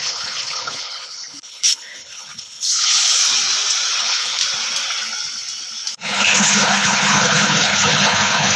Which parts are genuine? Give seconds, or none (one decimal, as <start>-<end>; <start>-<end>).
3.2-4.0; 4.4-5.9